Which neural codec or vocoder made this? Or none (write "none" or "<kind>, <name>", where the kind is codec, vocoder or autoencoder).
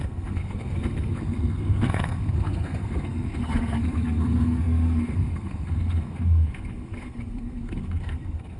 codec, SNAC